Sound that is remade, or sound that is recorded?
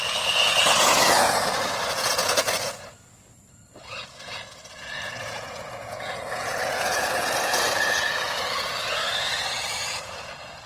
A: remade